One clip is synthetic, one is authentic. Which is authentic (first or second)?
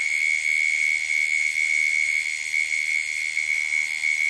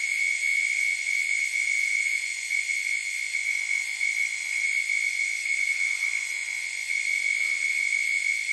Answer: first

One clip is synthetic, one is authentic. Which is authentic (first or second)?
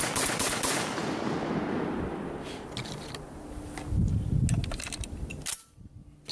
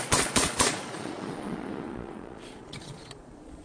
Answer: first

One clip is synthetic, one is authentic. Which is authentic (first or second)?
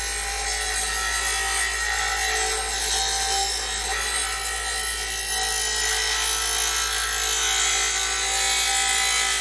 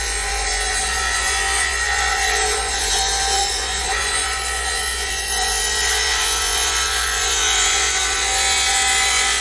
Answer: first